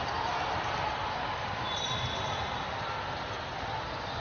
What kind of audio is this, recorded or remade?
recorded